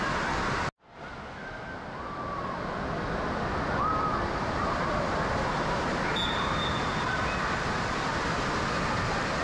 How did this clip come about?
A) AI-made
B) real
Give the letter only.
B